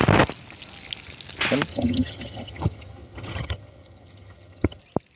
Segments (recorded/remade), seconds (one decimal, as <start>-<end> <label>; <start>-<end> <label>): 0.0-1.7 recorded; 1.7-4.8 remade; 4.8-5.2 recorded